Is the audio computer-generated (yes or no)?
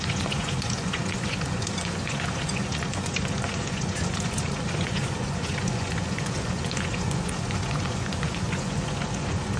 yes